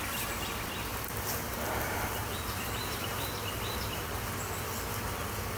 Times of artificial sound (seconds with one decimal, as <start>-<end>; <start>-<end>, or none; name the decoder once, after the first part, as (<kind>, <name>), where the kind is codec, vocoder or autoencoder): 0.9-4.1 (vocoder, BigVGAN v2)

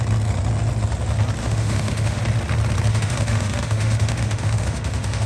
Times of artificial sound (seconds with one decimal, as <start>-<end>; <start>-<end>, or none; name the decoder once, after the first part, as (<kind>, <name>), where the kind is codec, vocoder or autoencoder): 1.4-2.2 (autoencoder, DAC-VAE); 2.9-5.3

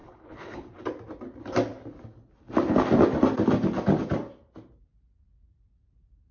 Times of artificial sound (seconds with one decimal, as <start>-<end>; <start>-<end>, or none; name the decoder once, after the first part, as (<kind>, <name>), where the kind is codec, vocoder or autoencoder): 0.0-0.8 (codec, HILCodec)

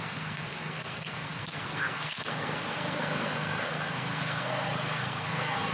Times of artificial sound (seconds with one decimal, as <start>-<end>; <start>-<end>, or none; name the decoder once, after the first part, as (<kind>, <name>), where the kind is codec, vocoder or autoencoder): 0.0-5.7 (codec, SNAC)

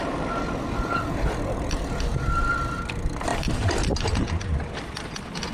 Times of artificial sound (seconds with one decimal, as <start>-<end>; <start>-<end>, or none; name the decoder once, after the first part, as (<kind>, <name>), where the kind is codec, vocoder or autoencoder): none

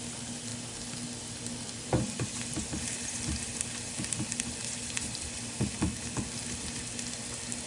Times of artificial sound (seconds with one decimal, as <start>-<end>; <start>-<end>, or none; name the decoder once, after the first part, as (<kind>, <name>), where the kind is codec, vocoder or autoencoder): none